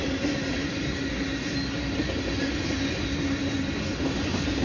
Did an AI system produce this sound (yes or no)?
no